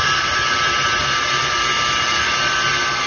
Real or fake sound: real